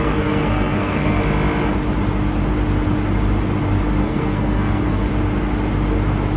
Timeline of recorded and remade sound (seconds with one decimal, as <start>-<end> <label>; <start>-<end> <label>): 0.0-1.2 remade; 1.2-4.0 recorded; 4.0-5.1 remade; 5.1-6.4 recorded

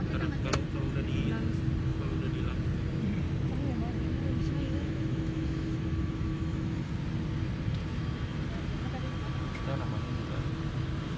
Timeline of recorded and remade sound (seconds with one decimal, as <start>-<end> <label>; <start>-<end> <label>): 0.0-4.4 recorded; 4.4-6.9 remade; 6.9-11.2 recorded

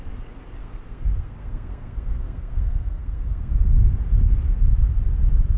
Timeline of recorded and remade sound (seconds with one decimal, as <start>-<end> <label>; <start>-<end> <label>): 0.0-0.6 recorded; 0.6-4.0 remade; 4.0-5.6 recorded

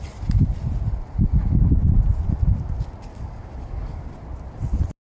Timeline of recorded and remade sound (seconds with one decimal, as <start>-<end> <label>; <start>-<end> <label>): 0.0-3.1 recorded; 3.1-4.0 remade; 4.0-5.1 recorded